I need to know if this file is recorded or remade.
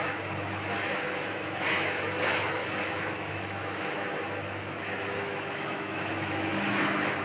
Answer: remade